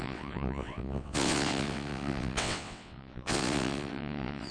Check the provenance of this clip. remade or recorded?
remade